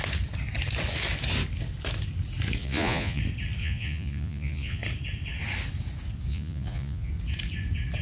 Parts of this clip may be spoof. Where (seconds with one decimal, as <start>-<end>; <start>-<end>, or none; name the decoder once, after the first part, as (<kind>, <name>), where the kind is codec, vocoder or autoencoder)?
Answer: 2.6-3.2 (vocoder, Vocos); 3.6-4.8; 6.3-7.1